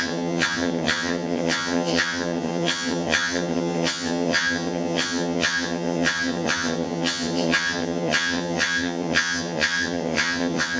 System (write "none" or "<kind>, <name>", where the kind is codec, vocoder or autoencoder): vocoder, HiFi-GAN